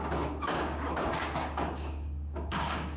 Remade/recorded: remade